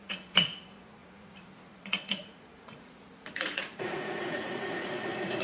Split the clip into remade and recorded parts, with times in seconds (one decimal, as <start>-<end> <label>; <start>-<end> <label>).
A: 0.0-5.4 remade